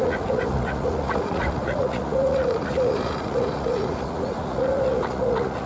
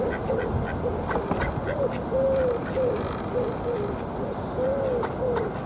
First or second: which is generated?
first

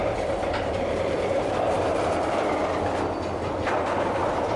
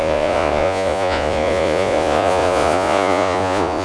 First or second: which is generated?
second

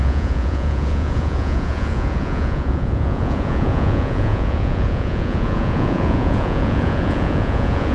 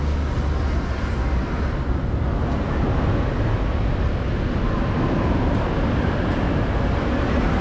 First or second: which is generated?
first